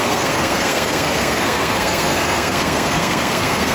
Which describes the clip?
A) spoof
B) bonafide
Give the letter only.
A